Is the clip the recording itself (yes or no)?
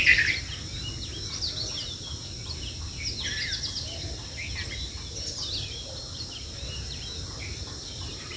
yes